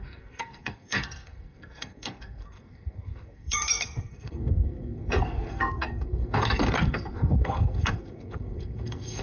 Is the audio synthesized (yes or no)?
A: yes